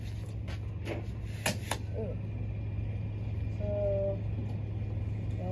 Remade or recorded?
recorded